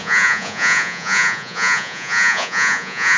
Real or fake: fake